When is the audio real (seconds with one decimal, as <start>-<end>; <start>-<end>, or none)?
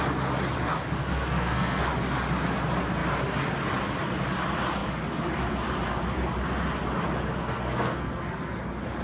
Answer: 0.0-1.0; 1.8-7.4; 8.6-9.0